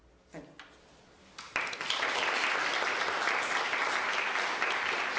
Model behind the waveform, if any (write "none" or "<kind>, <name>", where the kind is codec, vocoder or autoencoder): none